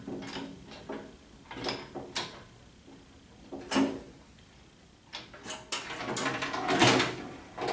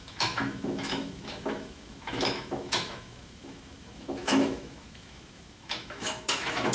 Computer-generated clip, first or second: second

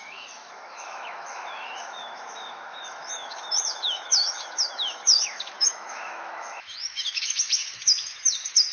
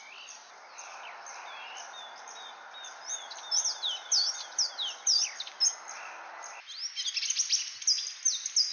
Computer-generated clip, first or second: first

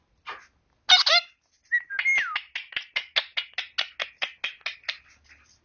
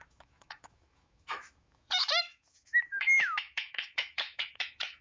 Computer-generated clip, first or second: second